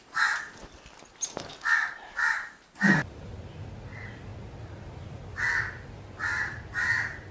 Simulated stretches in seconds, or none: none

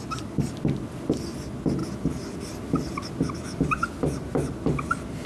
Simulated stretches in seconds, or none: none

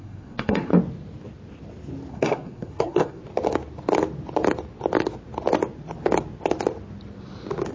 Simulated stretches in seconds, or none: 0.0-0.7 (codec, SNAC); 2.1-3.2

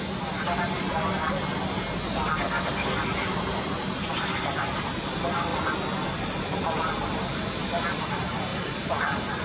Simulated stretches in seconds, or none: 2.4-2.9 (codec, SNAC)

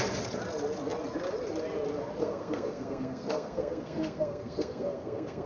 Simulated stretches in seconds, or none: 2.2-5.5 (codec, SNAC)